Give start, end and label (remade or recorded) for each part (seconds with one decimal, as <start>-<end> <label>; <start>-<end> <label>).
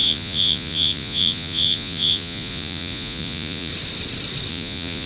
0.0-3.7 remade; 3.7-4.5 recorded; 4.5-5.1 remade